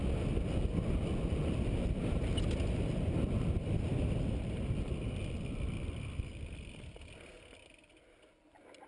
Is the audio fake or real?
real